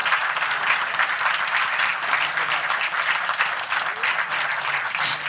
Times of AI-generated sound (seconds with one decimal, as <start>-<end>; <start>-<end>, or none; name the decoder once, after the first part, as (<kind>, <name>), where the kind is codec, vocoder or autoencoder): none